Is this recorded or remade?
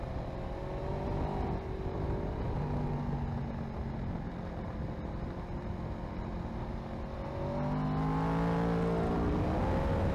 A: recorded